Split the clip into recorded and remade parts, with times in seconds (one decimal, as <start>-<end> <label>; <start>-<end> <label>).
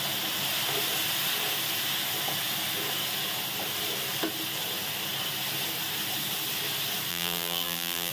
0.0-7.1 recorded; 7.1-8.1 remade